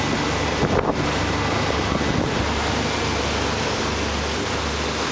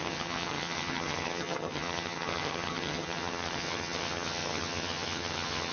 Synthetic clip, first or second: second